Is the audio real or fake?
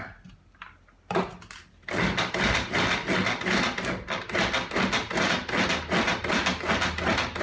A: real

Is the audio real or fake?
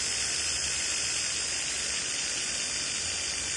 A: real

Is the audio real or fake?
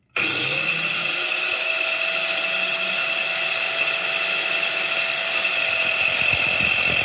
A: real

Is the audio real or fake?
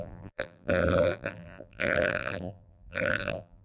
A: fake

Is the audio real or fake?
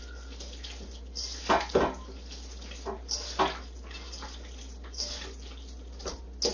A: real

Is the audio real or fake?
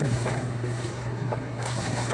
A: fake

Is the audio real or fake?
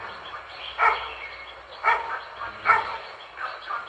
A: real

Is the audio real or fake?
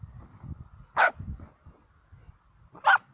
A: real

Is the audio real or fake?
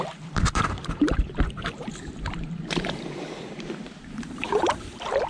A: fake